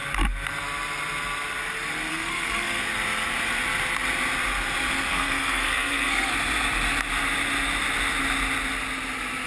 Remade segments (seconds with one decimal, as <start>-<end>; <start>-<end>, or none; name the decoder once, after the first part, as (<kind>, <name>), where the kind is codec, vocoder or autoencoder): 2.1-2.8 (codec, SNAC); 5.1-6.3